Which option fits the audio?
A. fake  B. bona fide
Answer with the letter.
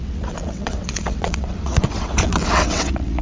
A